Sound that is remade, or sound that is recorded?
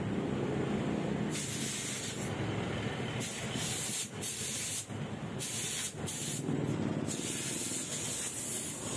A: recorded